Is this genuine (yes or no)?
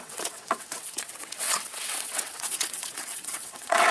no